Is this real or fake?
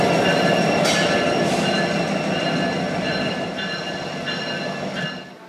real